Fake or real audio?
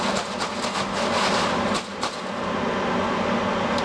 real